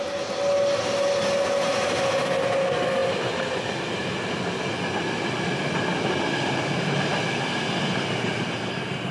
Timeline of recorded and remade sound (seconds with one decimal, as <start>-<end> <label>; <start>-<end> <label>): 0.0-9.1 recorded